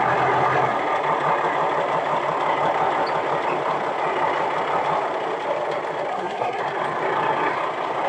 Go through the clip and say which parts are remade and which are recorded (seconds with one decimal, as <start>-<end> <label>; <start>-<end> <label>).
0.0-6.1 recorded; 6.1-6.6 remade; 6.6-8.1 recorded